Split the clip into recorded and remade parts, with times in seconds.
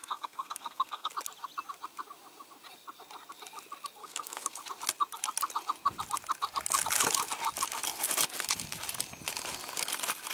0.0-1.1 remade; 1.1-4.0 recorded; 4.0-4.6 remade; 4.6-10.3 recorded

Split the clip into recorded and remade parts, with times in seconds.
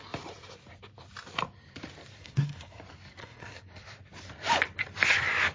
0.0-2.2 recorded; 2.2-2.8 remade; 2.8-3.2 recorded; 3.2-3.7 remade; 3.7-5.5 recorded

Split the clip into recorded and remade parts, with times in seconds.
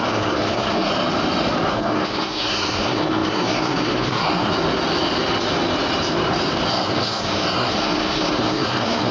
0.0-0.9 remade; 0.9-1.7 recorded; 1.7-4.5 remade; 4.5-6.7 recorded; 6.7-9.1 remade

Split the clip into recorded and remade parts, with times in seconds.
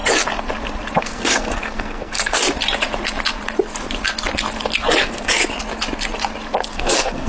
0.0-1.0 recorded; 1.0-2.4 remade; 2.4-5.0 recorded; 5.0-5.4 remade; 5.4-6.7 recorded; 6.7-7.3 remade